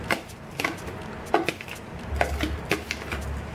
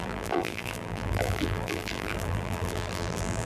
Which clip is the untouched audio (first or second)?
first